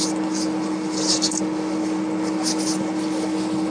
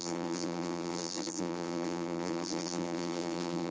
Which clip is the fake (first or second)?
second